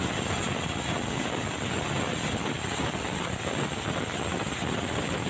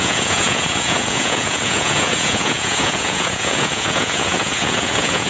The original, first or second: first